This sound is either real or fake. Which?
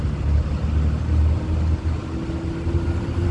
real